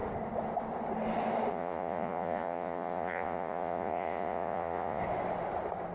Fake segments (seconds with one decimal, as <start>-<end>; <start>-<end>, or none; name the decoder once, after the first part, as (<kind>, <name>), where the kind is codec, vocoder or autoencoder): 1.5-5.0 (vocoder, Vocos)